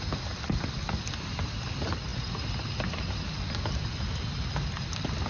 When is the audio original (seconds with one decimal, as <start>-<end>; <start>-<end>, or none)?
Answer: 0.0-5.3